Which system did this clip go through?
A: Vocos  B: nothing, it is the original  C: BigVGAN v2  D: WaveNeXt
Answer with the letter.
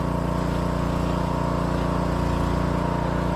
B